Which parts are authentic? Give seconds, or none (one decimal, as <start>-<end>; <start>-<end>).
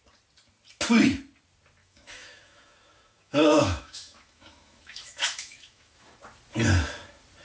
0.0-1.8; 6.2-7.4